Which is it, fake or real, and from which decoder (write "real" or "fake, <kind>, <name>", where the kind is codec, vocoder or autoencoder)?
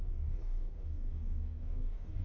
fake, codec, DAC